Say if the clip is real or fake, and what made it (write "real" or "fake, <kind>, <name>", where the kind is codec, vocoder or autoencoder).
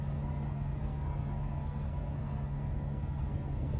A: fake, codec, SNAC